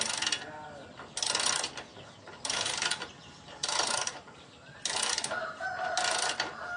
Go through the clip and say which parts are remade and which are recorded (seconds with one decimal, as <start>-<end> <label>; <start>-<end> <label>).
0.0-1.9 recorded; 1.9-6.0 remade; 6.0-6.8 recorded